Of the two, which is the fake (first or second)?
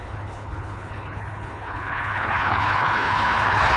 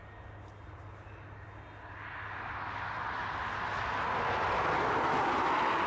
first